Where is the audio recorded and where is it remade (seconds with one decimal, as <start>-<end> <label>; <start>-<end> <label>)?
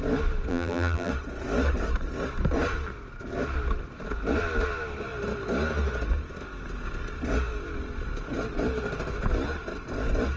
0.0-0.5 recorded; 0.5-1.1 remade; 1.1-10.4 recorded